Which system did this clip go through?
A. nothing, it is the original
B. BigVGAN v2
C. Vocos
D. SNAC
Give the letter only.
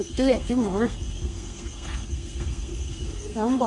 D